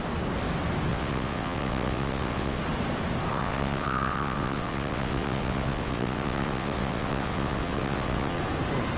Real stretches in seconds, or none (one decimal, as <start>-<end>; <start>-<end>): 0.0-0.9; 2.6-3.3; 8.4-9.0